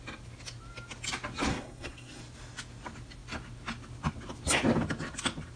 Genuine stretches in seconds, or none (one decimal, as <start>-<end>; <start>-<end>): 0.0-1.5; 2.2-5.6